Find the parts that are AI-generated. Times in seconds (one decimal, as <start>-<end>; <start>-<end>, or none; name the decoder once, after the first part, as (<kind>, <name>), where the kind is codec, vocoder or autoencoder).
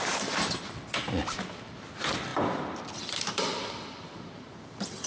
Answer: 2.3-5.1 (vocoder, BigVGAN v2)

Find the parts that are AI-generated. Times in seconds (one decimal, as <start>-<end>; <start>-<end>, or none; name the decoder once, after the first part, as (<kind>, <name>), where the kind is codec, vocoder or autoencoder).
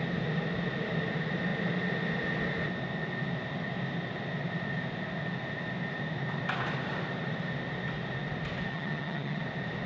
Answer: 8.7-9.4 (vocoder, HiFi-GAN)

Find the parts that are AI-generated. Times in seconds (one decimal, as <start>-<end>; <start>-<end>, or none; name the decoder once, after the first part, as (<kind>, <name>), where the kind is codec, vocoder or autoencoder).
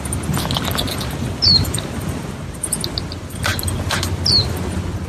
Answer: none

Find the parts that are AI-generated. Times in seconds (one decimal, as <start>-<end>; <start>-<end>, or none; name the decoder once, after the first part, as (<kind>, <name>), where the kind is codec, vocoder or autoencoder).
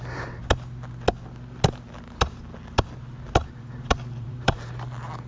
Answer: 0.0-0.4 (vocoder, BigVGAN v2); 3.6-5.3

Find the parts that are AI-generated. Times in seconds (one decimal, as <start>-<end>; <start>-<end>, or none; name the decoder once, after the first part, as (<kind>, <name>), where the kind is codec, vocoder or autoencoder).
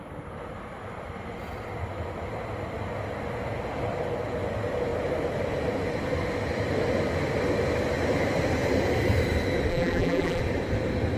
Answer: 9.7-10.4 (vocoder, BigVGAN v2)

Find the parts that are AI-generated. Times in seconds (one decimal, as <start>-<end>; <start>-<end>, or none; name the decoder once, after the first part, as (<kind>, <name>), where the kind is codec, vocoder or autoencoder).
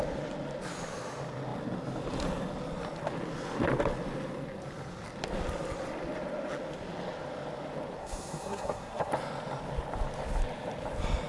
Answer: 8.0-9.1 (codec, SNAC)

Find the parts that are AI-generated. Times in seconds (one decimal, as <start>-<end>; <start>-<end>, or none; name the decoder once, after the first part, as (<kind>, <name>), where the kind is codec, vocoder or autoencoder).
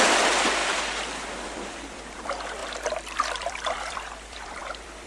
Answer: 0.0-5.1 (vocoder, BigVGAN v2)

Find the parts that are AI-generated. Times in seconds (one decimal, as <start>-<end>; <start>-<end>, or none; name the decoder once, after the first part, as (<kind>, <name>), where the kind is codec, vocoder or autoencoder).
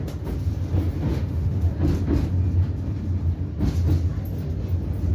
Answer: 1.1-1.7 (autoencoder, DAC-VAE)